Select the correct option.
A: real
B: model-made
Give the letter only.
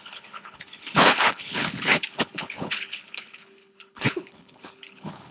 B